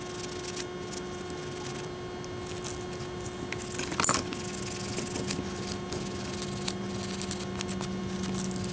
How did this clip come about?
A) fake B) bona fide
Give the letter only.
B